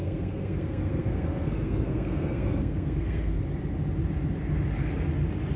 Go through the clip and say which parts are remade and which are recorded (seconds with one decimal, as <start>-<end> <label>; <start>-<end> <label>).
0.0-3.4 remade; 3.4-5.6 recorded